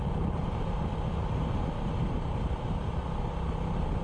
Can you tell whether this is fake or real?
real